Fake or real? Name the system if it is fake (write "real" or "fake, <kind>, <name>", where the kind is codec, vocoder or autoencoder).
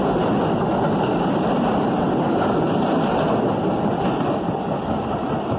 real